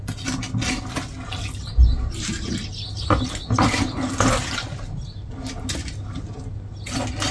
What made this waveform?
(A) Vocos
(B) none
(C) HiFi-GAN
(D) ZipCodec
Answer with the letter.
B